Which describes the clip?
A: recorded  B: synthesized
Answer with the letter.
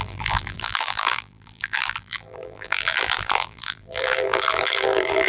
B